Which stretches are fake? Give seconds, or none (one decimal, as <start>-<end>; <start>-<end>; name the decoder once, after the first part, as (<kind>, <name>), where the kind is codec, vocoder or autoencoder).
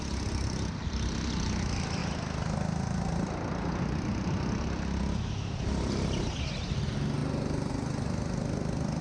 none